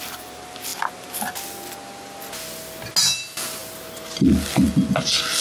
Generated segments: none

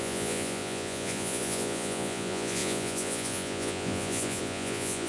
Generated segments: 0.0-5.1 (vocoder, Vocos)

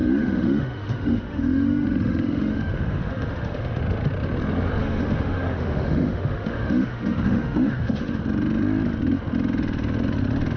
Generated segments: 0.0-3.8 (autoencoder, DAC-VAE); 4.8-8.2

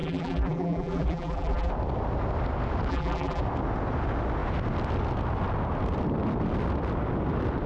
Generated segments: 0.0-1.7 (vocoder, BigVGAN v2); 2.9-3.4